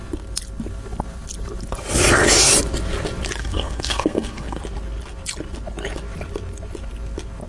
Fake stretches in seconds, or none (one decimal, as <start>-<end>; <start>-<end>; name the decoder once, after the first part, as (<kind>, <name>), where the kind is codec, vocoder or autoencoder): 3.4-4.6 (codec, SNAC)